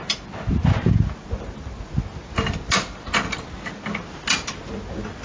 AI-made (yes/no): no